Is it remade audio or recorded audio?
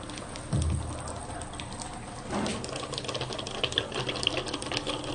recorded